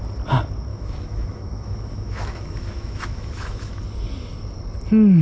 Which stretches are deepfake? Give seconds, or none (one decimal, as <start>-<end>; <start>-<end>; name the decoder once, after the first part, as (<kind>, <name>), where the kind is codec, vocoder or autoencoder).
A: 0.7-3.8 (autoencoder, DAC-VAE)